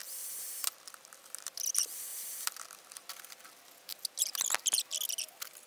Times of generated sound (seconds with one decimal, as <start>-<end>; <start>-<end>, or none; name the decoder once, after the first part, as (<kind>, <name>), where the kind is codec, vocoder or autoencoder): none